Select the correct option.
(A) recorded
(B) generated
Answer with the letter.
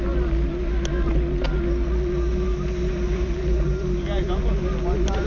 A